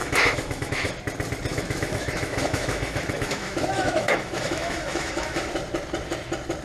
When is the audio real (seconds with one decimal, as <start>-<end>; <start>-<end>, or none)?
0.9-1.5; 5.5-6.6